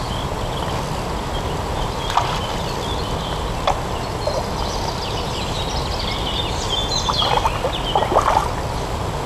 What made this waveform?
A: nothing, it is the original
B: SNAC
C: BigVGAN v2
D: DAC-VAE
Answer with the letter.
A